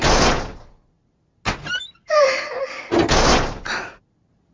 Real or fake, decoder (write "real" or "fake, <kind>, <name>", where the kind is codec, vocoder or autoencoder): real